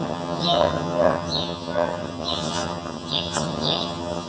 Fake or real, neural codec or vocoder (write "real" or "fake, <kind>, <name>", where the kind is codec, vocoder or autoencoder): fake, vocoder, HiFi-GAN